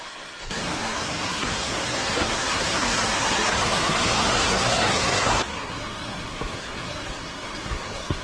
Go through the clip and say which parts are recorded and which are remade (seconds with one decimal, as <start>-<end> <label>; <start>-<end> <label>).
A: 0.0-8.2 remade